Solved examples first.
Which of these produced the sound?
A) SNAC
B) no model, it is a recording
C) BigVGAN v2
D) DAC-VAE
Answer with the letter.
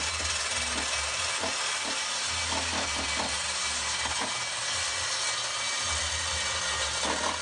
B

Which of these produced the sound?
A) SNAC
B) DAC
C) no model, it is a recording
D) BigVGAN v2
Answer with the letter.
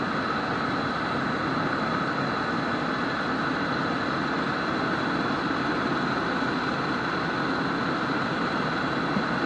C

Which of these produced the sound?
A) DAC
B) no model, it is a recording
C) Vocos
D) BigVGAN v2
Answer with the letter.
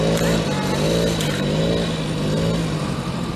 B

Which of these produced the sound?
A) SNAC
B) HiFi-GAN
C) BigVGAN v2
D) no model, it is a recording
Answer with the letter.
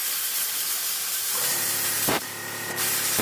C